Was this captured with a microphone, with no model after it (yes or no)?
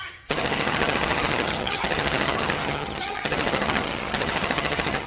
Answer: no